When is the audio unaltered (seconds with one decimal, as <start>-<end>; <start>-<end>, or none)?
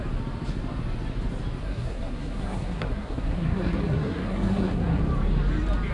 0.0-1.6; 5.0-5.9